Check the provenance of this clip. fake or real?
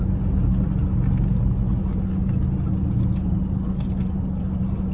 real